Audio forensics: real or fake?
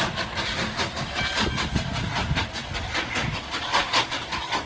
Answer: real